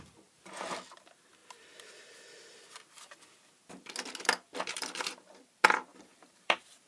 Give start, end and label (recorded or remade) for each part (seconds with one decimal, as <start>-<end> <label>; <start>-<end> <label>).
0.0-5.9 recorded; 5.9-6.9 remade